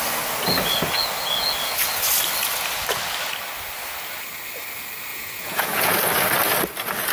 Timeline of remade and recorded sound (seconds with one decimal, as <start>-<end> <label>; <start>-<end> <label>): 0.0-5.1 recorded; 5.1-5.9 remade; 5.9-7.1 recorded